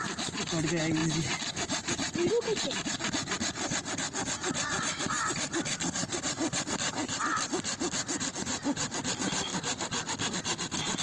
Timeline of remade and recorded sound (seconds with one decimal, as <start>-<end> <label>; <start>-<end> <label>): 0.0-11.0 recorded